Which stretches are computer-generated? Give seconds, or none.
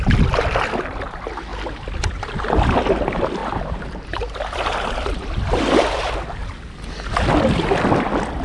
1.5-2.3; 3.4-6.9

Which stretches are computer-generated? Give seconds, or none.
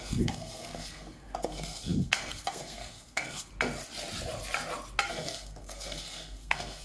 0.0-3.5; 5.1-6.8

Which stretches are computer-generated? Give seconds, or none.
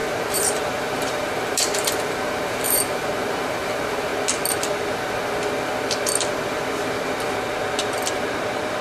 0.0-4.1; 8.1-8.8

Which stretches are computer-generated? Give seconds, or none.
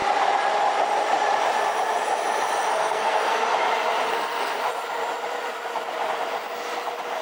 2.7-3.4; 4.0-4.6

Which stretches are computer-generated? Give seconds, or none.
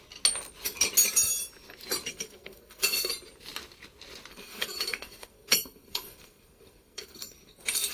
2.1-3.1; 4.3-7.9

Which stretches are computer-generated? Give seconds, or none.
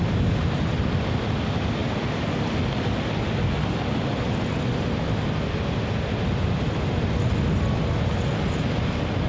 none